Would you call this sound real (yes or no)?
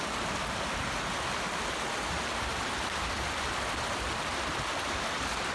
yes